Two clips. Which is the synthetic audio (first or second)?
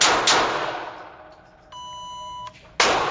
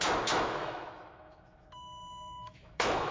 second